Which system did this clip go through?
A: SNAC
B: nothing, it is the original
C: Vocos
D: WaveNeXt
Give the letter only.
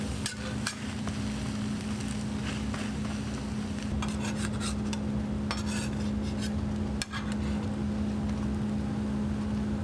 B